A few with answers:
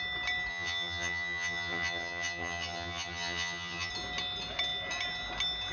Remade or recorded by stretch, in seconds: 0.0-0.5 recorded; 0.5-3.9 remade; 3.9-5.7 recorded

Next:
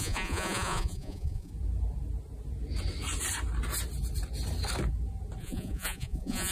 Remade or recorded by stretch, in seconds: 0.0-1.5 remade; 1.5-5.4 recorded; 5.4-6.5 remade

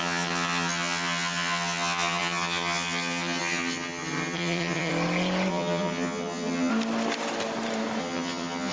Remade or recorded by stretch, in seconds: 0.0-4.9 remade; 4.9-5.5 recorded; 5.5-6.7 remade; 6.7-8.0 recorded; 8.0-8.7 remade

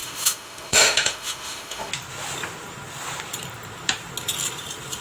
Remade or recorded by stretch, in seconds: 0.0-1.9 remade; 1.9-5.0 recorded